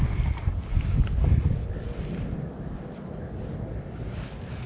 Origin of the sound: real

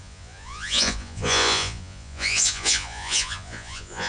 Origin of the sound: fake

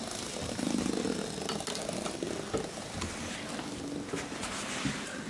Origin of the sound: real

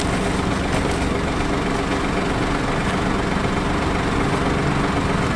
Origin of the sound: real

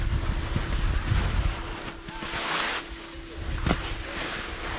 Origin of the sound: real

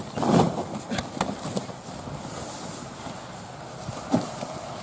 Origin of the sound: real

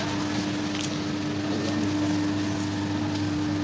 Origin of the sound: real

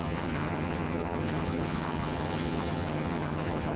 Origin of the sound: fake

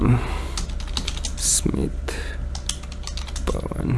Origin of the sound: real